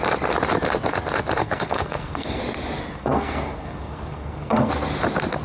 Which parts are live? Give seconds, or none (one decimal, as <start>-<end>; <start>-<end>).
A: 0.0-1.4; 2.4-3.0; 4.7-5.4